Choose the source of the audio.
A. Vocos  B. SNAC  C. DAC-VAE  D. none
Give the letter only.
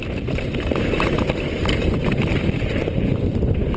D